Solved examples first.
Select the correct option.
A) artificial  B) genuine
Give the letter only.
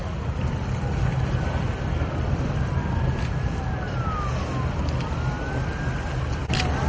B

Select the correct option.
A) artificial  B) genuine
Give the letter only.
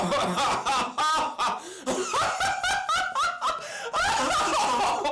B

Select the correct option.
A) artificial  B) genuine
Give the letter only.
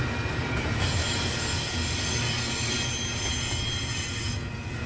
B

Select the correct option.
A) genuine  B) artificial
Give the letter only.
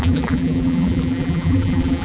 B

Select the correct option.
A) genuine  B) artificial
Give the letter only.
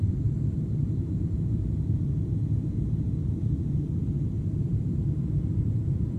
B